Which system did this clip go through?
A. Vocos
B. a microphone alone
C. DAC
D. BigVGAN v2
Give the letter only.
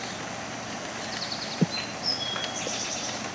B